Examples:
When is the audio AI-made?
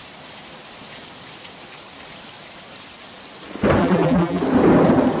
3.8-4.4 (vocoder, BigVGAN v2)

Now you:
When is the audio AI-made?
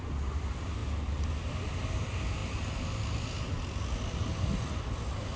none